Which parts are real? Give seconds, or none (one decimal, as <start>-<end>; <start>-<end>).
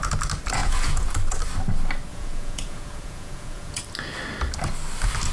0.0-0.6; 1.1-2.1; 3.8-5.3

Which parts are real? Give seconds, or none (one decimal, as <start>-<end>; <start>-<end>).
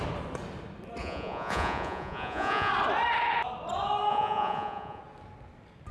0.0-1.0; 2.7-4.1; 5.0-5.9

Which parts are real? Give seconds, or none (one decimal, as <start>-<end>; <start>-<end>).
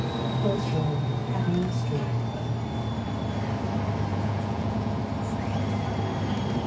0.0-4.1; 5.0-6.7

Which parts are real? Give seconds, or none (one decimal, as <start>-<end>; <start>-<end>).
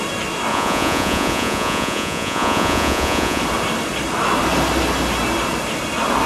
0.0-0.5; 3.4-6.3